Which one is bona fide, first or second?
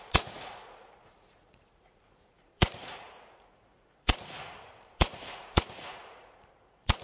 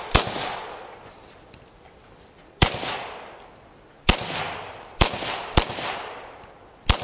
second